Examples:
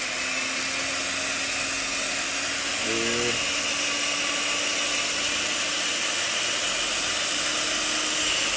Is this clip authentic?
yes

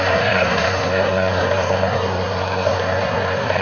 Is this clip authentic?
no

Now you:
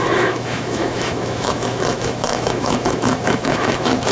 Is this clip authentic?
no